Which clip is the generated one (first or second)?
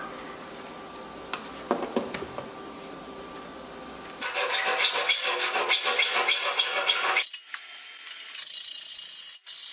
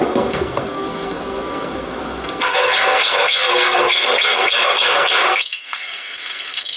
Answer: second